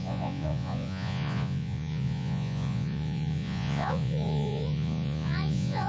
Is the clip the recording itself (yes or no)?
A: no